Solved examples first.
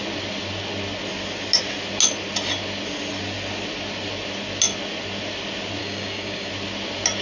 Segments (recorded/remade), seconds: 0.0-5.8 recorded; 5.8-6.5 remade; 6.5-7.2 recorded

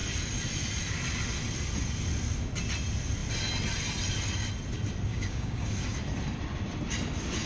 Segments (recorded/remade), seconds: 0.0-5.1 recorded; 5.1-5.7 remade; 5.7-7.5 recorded

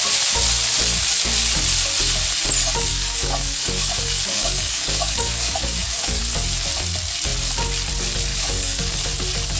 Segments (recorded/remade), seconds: 0.0-2.9 recorded; 2.9-6.2 remade; 6.2-8.3 recorded; 8.3-9.0 remade; 9.0-9.6 recorded